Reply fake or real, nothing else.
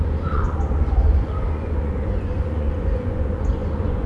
fake